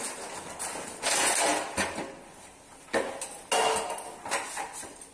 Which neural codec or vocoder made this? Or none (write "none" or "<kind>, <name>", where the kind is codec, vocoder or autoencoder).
none